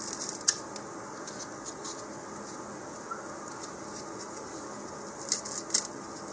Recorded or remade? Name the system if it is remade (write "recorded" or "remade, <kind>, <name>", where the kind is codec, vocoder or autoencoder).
recorded